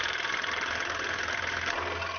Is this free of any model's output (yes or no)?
no